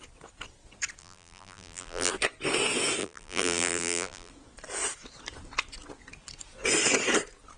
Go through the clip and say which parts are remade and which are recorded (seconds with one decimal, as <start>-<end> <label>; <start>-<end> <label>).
0.0-1.0 recorded; 1.0-2.1 remade; 2.1-3.0 recorded; 3.0-4.3 remade; 4.3-7.6 recorded